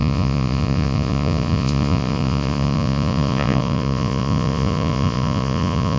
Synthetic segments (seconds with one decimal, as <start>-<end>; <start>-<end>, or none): 0.0-6.0